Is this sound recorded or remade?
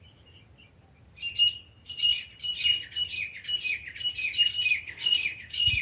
recorded